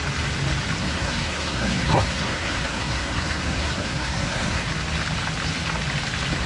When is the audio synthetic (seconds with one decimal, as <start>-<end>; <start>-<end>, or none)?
0.8-4.7